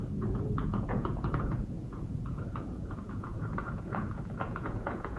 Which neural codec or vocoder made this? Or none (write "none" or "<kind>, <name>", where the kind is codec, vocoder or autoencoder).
vocoder, Vocos